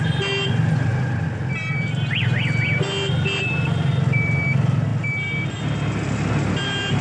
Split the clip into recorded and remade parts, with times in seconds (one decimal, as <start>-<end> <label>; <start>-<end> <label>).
0.0-7.0 recorded